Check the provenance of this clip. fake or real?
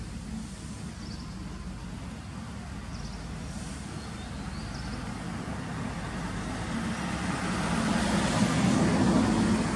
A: real